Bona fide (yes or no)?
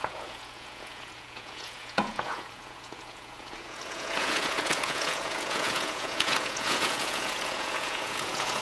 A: no